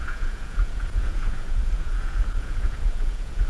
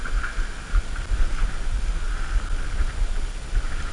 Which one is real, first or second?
second